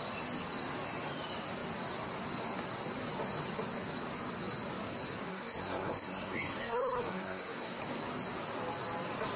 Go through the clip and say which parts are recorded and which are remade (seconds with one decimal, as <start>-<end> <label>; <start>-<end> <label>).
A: 0.0-5.3 recorded; 5.3-7.8 remade; 7.8-9.4 recorded